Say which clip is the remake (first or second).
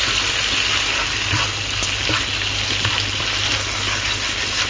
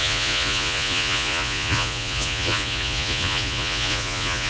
second